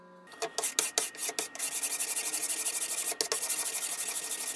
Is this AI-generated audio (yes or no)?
no